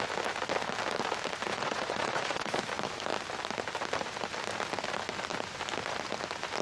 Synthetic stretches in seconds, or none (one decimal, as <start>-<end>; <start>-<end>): 1.5-2.6